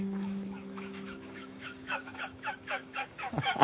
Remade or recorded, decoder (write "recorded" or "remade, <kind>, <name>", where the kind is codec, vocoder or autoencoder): remade, autoencoder, DAC-VAE